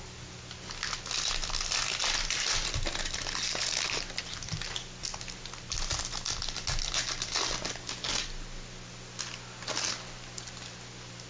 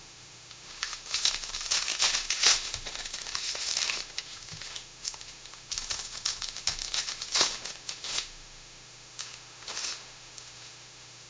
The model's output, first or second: second